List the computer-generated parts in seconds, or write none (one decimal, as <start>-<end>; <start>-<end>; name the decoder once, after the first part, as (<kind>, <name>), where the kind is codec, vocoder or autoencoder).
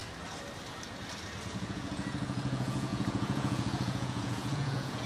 1.6-5.1 (vocoder, Vocos)